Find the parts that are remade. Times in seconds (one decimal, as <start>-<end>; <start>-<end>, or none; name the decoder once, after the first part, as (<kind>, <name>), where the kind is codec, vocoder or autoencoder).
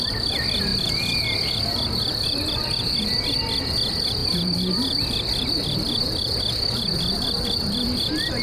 none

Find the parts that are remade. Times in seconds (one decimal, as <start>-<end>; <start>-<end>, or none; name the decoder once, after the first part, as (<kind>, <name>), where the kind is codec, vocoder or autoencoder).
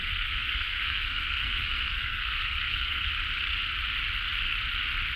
0.0-3.1 (codec, SNAC)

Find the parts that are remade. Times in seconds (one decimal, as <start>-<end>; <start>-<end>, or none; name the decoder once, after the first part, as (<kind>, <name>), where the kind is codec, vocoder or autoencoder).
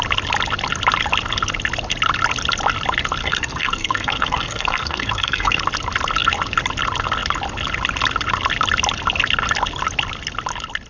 3.2-5.6 (codec, SNAC)